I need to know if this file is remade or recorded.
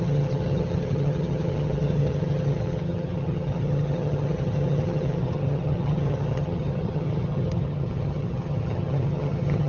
remade